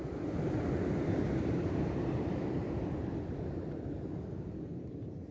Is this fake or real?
fake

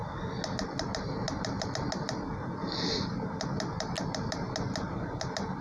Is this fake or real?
real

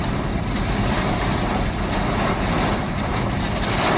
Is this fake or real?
fake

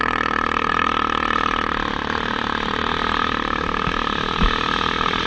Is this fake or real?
fake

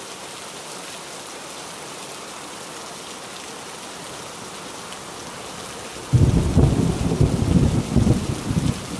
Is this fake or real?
real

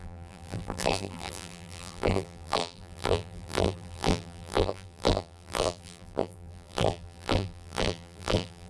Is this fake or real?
fake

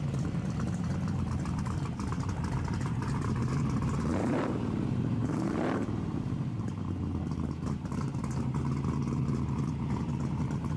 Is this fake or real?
fake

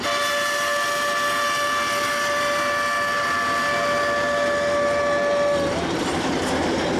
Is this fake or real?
real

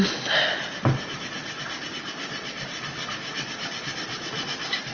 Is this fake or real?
fake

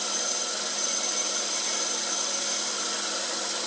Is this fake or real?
real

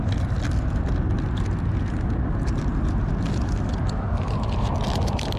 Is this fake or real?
real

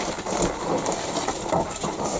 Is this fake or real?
fake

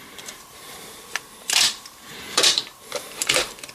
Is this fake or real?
fake